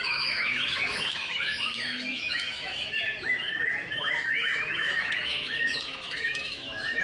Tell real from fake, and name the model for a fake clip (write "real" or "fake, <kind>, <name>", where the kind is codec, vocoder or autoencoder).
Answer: fake, autoencoder, DAC-VAE